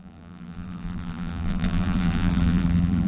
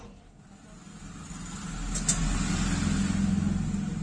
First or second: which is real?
second